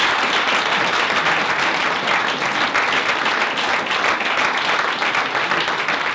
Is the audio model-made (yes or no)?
no